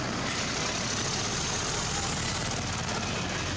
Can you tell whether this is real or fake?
real